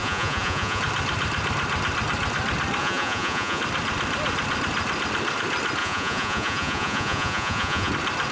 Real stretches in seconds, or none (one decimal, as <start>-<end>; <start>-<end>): 0.8-2.8; 3.6-5.8; 7.9-8.3